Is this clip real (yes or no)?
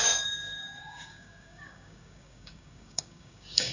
no